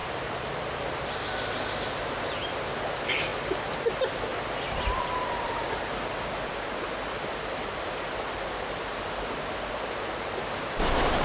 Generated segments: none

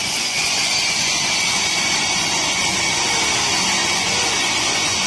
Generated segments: 0.0-3.1 (vocoder, Vocos); 3.8-5.1